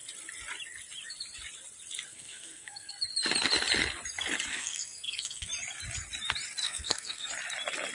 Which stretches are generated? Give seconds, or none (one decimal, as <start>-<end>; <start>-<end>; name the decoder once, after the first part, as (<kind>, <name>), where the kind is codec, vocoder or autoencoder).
2.1-2.9 (codec, SNAC); 4.5-5.5; 6.6-7.3